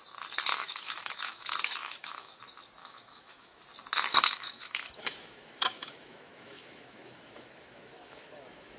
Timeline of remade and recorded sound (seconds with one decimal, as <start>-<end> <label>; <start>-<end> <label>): 0.0-0.5 recorded; 0.5-2.4 remade; 2.4-2.8 recorded; 2.8-3.6 remade; 3.6-4.1 recorded; 4.1-8.8 remade